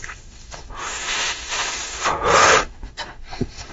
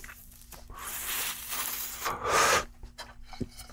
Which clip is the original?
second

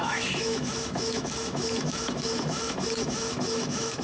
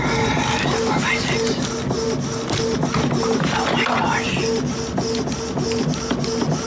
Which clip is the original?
second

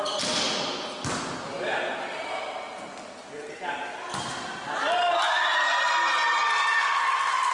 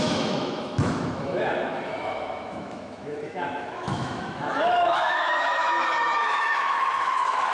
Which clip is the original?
first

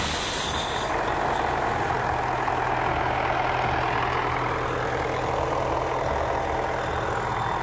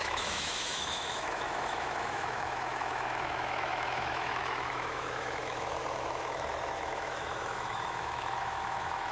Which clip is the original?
first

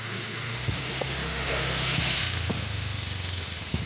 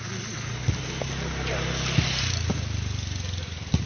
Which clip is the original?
second